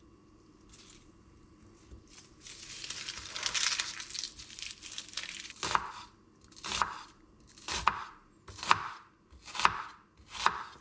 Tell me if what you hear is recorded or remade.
recorded